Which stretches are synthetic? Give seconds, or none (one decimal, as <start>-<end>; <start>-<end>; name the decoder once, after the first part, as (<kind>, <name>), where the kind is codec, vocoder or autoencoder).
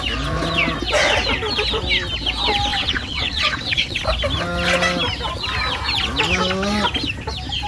2.7-4.0 (vocoder, WaveNeXt)